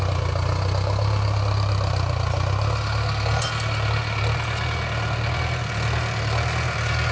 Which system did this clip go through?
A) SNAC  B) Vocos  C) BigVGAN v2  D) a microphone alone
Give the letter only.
D